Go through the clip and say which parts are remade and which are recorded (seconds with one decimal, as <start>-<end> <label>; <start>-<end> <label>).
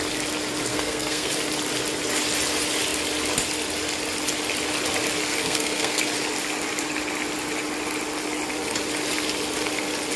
0.0-0.7 recorded; 0.7-1.3 remade; 1.3-5.3 recorded; 5.3-6.0 remade; 6.0-10.2 recorded